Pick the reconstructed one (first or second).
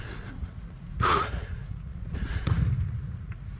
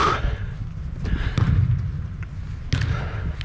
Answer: first